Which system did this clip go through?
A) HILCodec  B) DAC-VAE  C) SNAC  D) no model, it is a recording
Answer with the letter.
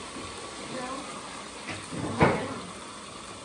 D